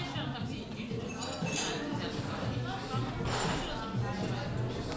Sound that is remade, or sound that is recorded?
recorded